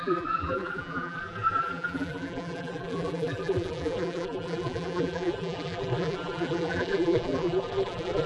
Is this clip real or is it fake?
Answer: fake